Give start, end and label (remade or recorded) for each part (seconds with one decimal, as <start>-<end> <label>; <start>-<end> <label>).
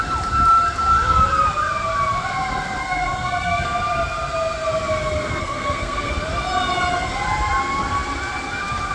0.0-2.8 recorded; 2.8-3.8 remade; 3.8-5.4 recorded; 5.4-6.1 remade; 6.1-8.9 recorded